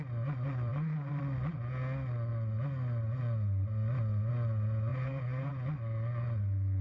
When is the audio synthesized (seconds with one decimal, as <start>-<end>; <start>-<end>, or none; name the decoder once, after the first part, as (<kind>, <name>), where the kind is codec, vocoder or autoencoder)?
0.7-1.2 (vocoder, BigVGAN v2); 4.9-5.5